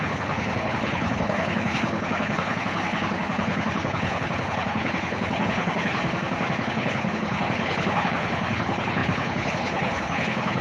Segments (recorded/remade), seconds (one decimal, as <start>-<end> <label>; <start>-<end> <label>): 0.0-6.0 remade; 6.0-6.6 recorded; 6.6-10.6 remade